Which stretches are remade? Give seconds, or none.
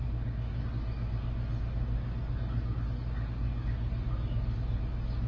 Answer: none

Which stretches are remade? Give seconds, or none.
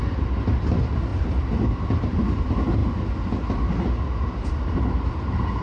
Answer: none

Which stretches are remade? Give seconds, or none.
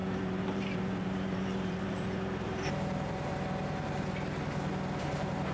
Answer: 0.0-3.3; 5.0-5.5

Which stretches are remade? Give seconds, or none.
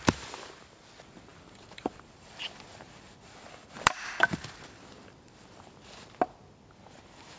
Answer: 1.3-5.7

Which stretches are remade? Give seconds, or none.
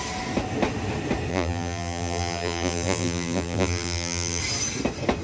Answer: 1.3-4.4